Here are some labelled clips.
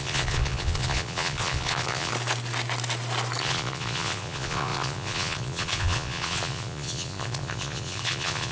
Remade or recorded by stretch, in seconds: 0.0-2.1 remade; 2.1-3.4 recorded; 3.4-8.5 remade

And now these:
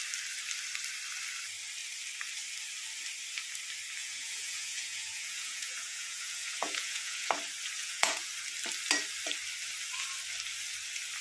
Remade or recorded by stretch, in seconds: 0.0-4.0 recorded; 4.0-7.3 remade; 7.3-7.8 recorded; 7.8-8.3 remade; 8.3-11.2 recorded